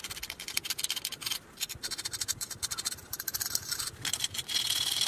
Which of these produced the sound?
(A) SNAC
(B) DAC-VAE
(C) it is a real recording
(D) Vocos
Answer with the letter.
C